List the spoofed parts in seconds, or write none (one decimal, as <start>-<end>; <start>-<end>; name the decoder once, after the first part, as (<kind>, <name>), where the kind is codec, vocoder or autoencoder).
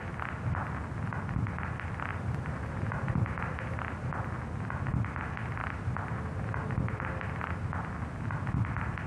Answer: 2.1-4.1 (vocoder, BigVGAN v2); 5.6-7.5